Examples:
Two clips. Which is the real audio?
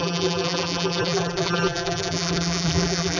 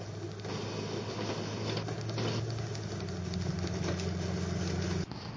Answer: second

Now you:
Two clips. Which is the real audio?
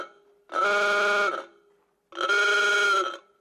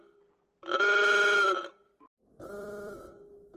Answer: first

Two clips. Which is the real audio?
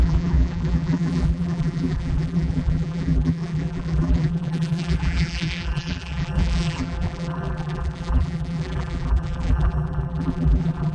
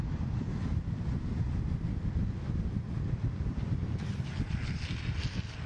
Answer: second